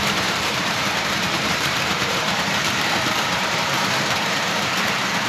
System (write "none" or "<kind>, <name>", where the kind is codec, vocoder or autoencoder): vocoder, BigVGAN v2